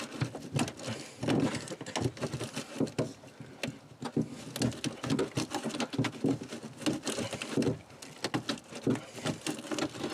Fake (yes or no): no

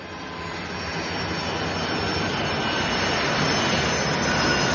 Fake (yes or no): no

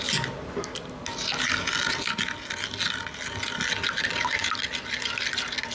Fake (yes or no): no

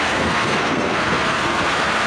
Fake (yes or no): yes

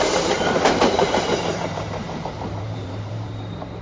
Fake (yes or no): yes